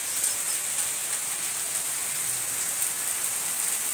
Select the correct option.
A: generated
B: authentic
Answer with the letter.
B